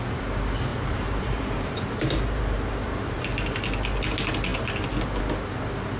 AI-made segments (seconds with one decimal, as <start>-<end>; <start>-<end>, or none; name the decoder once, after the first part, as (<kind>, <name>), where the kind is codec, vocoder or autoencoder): 0.7-3.2 (vocoder, BigVGAN v2)